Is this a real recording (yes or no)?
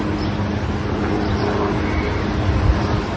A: yes